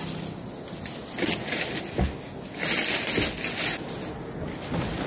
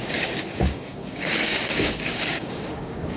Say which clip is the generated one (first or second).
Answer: second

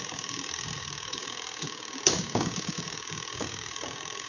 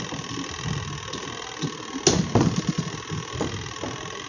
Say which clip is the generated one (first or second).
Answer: first